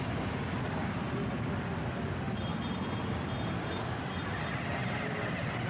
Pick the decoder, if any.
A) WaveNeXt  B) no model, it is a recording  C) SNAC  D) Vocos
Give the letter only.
B